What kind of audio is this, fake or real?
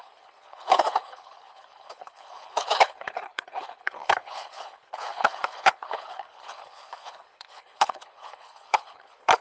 fake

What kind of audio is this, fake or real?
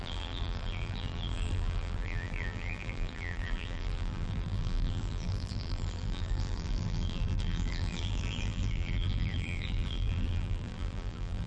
fake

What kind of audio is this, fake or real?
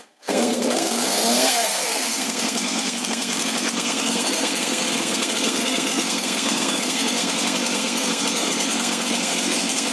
fake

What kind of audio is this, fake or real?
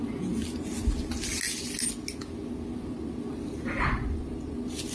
real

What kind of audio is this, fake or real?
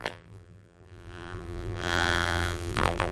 fake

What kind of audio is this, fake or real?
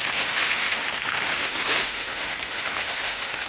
fake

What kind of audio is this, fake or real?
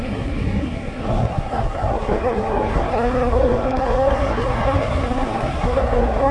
fake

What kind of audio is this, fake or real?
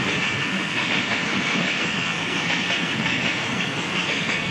fake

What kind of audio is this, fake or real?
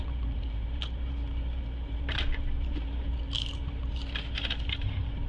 fake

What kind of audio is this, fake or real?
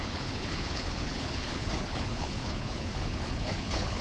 fake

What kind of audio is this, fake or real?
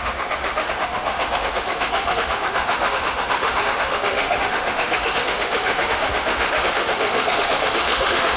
fake